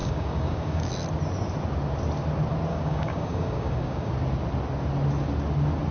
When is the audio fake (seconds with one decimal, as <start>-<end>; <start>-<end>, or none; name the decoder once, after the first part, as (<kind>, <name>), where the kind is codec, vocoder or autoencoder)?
0.0-0.9 (codec, DAC); 2.7-4.1